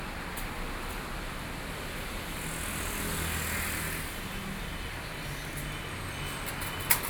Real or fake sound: real